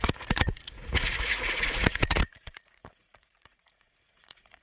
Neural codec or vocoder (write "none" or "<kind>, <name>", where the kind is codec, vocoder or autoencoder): vocoder, Vocos